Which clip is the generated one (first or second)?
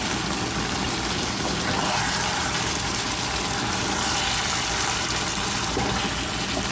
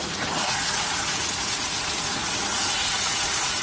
second